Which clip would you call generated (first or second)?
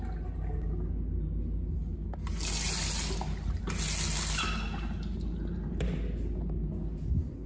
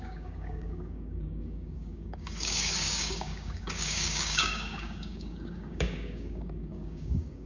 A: second